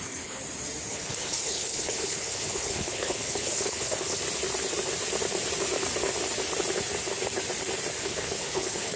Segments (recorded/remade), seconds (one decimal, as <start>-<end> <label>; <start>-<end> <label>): 0.0-0.4 remade; 0.4-0.9 recorded; 0.9-4.2 remade; 4.2-8.0 recorded; 8.0-9.0 remade